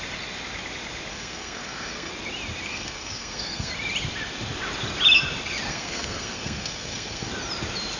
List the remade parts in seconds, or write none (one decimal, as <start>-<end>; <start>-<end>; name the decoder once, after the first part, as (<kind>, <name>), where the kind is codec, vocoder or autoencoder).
1.1-2.1 (codec, SNAC); 2.7-3.7; 5.7-7.3